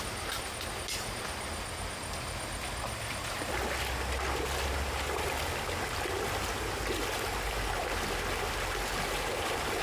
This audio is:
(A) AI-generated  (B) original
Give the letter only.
B